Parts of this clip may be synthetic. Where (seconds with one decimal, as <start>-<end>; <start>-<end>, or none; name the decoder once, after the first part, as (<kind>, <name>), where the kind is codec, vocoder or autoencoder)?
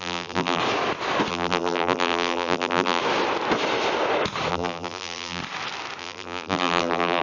0.0-0.6 (vocoder, BigVGAN v2); 1.3-3.0; 4.5-5.4; 6.0-7.2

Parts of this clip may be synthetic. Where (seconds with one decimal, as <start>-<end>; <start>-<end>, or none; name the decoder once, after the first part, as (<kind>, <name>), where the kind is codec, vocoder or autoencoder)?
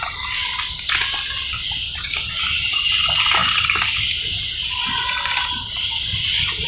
none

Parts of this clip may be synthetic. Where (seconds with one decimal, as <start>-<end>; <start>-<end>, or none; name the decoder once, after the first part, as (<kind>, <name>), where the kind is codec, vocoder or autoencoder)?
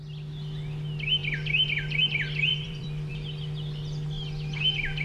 2.5-3.1 (vocoder, BigVGAN v2)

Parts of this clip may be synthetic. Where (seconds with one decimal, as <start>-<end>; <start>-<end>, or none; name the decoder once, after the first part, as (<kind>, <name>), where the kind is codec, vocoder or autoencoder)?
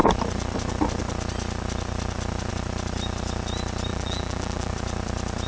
3.9-4.7 (vocoder, BigVGAN v2)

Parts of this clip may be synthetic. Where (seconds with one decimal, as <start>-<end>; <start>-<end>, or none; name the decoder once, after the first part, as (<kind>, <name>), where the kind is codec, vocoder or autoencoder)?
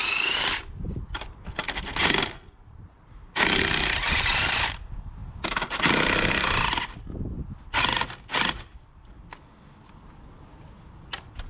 none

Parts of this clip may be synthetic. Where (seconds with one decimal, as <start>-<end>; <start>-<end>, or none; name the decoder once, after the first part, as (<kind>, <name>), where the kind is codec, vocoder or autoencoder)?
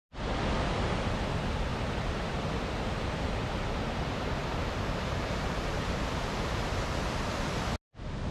1.7-2.3 (vocoder, BigVGAN v2); 4.4-5.9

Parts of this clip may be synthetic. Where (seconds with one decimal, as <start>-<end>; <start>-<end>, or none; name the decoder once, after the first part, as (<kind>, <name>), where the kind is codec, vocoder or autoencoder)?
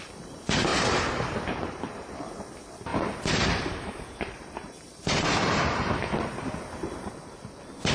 0.7-1.9 (vocoder, BigVGAN v2); 2.9-7.1